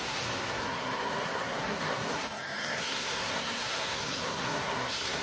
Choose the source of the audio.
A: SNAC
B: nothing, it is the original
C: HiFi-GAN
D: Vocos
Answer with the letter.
A